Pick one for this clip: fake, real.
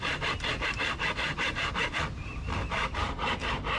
fake